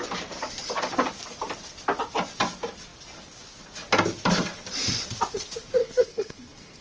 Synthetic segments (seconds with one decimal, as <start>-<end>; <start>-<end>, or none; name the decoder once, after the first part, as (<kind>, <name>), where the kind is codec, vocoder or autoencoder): 5.8-6.8 (codec, SNAC)